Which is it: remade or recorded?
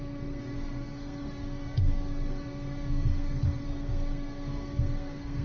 remade